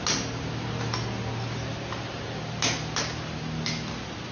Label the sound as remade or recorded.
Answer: recorded